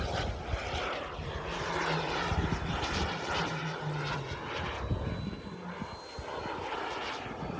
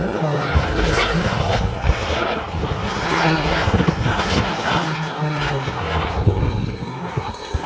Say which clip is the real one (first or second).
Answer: first